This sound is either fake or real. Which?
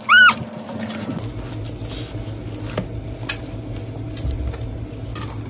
real